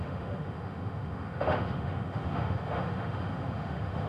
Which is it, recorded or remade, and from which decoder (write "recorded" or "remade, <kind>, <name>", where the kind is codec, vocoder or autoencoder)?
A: remade, autoencoder, DAC-VAE